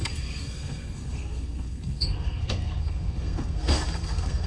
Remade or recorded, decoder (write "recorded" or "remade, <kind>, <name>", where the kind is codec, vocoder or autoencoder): remade, codec, SNAC